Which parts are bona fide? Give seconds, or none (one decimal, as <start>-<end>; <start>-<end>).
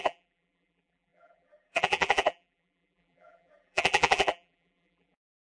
none